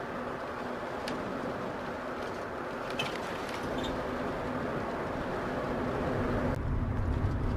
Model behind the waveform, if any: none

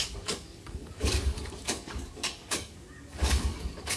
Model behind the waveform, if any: codec, DAC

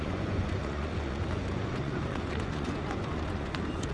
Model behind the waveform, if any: vocoder, Vocos